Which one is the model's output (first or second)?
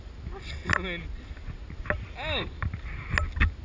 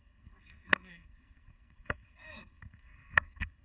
second